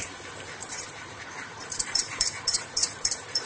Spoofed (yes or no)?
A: yes